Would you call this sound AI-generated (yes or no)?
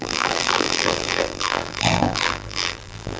yes